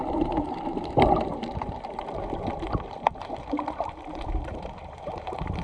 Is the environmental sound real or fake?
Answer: fake